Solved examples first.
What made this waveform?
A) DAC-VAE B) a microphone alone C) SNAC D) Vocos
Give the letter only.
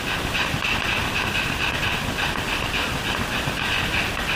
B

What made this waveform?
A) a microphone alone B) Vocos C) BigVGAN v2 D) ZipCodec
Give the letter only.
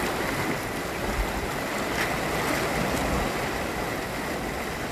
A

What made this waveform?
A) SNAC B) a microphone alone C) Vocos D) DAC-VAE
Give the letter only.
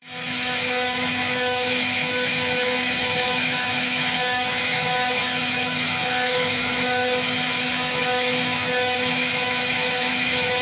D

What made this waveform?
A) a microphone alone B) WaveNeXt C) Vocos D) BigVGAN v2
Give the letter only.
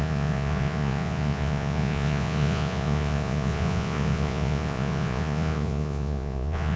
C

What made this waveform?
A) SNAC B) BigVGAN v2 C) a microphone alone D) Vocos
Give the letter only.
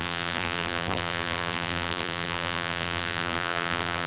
B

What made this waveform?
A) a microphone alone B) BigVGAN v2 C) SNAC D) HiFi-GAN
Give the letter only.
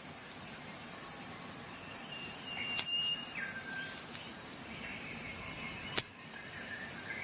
B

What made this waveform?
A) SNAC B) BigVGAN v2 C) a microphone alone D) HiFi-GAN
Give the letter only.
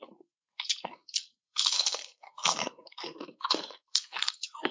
A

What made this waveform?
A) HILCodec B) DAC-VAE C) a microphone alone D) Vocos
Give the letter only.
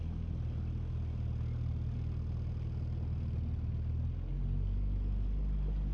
C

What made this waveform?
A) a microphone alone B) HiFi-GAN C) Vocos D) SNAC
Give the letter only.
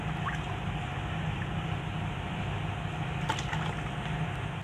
A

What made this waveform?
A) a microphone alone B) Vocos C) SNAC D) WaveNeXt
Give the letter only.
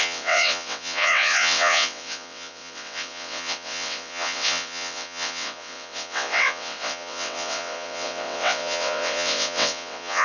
D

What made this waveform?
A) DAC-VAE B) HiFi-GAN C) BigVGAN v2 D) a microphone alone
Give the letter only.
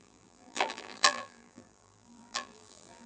C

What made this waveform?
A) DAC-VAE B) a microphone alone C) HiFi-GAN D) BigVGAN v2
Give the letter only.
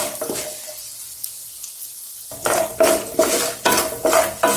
B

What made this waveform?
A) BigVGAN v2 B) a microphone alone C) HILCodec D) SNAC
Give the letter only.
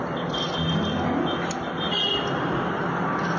B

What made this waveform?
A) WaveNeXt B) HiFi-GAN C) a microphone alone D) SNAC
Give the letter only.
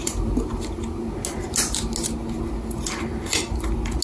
C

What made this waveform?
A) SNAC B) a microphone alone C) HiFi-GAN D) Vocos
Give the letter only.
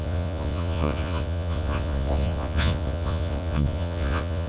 D